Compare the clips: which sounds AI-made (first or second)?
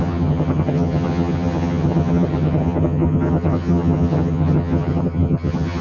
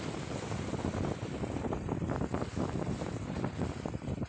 first